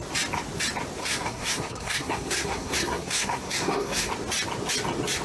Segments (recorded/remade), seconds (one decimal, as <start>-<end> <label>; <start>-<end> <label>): 0.0-1.0 recorded; 1.0-4.1 remade; 4.1-5.2 recorded